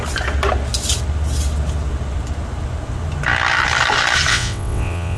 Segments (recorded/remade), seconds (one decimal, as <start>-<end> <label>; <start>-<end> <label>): 0.0-4.3 recorded; 4.3-5.2 remade